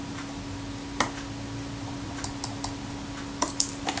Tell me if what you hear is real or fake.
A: real